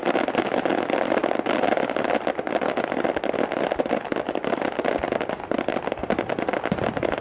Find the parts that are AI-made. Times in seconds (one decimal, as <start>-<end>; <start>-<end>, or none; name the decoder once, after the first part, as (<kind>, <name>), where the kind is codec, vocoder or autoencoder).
none